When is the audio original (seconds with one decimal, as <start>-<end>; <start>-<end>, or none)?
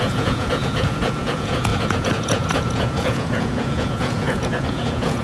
none